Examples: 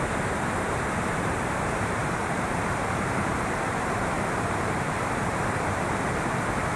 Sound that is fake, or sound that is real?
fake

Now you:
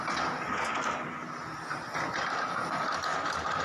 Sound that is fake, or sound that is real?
real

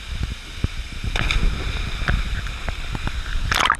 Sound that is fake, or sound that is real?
real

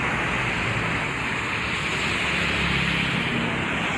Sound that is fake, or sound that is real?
real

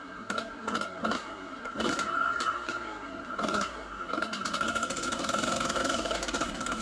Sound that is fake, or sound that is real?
fake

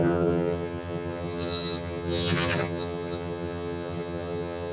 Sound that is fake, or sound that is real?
fake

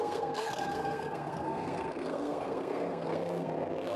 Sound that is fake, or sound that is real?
fake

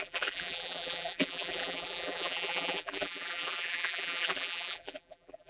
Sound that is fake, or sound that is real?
fake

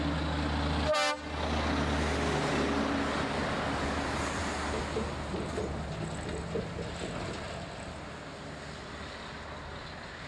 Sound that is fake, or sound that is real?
real